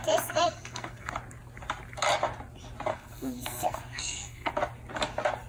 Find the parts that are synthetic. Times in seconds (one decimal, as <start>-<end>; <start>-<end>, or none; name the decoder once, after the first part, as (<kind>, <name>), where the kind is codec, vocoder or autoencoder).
0.0-1.1 (codec, SNAC); 2.9-4.5